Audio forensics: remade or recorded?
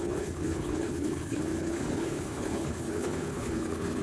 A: remade